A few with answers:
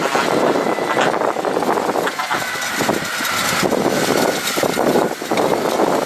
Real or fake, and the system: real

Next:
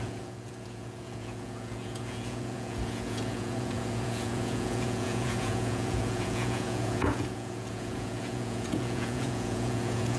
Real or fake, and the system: fake, vocoder, Vocos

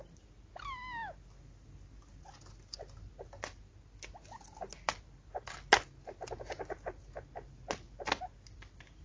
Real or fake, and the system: real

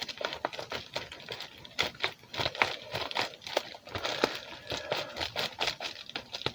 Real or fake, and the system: real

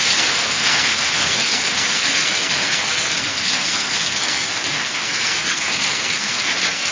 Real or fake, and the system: fake, codec, SNAC